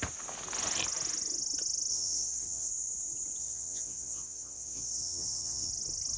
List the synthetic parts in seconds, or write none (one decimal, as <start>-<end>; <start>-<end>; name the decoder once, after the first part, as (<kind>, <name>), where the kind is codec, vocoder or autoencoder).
1.9-2.7 (vocoder, WaveNeXt); 3.4-5.7